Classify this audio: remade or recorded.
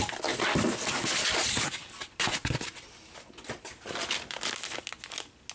recorded